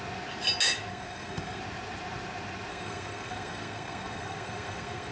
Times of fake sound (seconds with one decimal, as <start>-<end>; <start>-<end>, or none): 0.9-1.6; 2.7-5.1